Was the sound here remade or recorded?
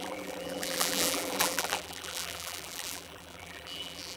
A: remade